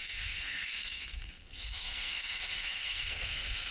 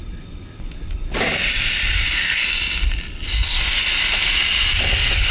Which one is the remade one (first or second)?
first